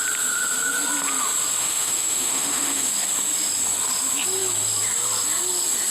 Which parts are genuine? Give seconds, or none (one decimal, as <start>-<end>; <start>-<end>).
0.0-1.6; 2.9-5.9